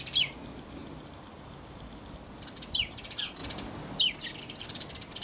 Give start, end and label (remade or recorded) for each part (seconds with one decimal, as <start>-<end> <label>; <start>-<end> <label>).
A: 0.0-5.2 recorded

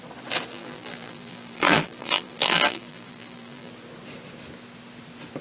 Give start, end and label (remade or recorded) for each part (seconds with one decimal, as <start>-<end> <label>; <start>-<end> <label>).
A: 0.0-0.5 recorded; 0.5-3.7 remade; 3.7-5.4 recorded

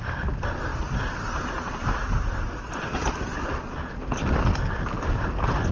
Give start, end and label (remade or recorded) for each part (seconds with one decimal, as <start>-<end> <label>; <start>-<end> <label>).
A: 0.0-0.7 recorded; 0.7-4.0 remade; 4.0-5.7 recorded

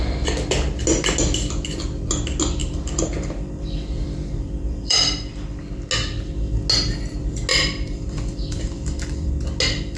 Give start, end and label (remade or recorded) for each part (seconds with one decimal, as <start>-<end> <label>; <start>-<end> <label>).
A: 0.0-2.6 recorded; 2.6-5.6 remade; 5.6-7.5 recorded; 7.5-9.3 remade; 9.3-10.0 recorded